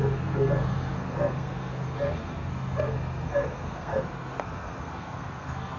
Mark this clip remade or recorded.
remade